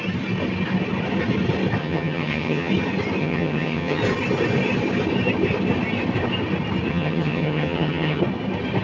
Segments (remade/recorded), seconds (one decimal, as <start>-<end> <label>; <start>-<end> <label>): 0.0-1.8 recorded; 1.8-2.7 remade; 2.7-3.2 recorded; 3.2-4.0 remade; 4.0-6.9 recorded; 6.9-8.2 remade; 8.2-8.8 recorded